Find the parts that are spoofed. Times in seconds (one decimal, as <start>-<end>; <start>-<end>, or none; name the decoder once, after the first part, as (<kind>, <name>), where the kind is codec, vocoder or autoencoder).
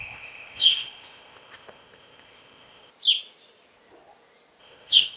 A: 0.0-2.9 (codec, ZipCodec); 4.6-5.2